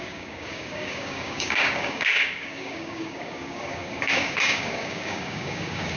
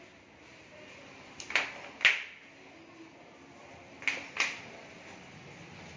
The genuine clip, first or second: second